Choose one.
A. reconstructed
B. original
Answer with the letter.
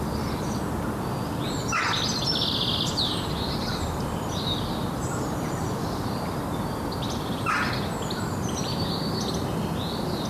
B